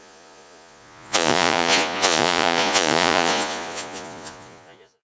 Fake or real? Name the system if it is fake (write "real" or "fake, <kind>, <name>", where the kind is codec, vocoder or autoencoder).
fake, vocoder, Vocos